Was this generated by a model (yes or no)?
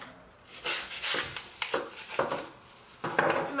no